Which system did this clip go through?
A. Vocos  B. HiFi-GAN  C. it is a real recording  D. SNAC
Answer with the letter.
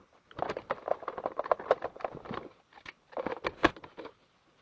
C